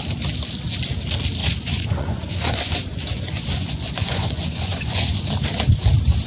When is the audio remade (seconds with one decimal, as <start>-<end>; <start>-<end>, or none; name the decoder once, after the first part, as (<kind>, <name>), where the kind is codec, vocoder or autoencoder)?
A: 1.4-5.2 (vocoder, Vocos)